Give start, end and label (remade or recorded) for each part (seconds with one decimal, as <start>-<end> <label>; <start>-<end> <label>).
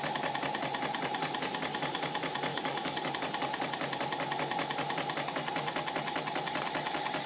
0.0-2.5 recorded; 2.5-3.1 remade; 3.1-7.3 recorded